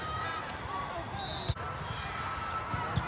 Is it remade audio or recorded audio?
recorded